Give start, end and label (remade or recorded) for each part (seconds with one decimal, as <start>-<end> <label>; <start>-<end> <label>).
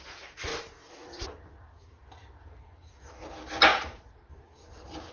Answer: 0.0-3.7 recorded; 3.7-4.3 remade; 4.3-5.1 recorded